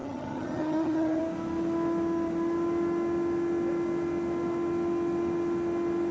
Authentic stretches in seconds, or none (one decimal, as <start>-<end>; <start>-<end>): 1.2-6.1